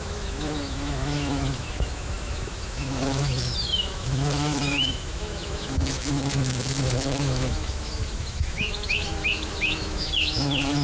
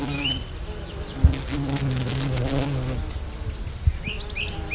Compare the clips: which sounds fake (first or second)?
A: first